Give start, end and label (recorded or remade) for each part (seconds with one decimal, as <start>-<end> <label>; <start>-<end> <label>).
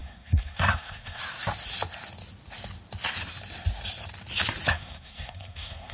0.0-1.2 remade; 1.2-4.7 recorded; 4.7-5.9 remade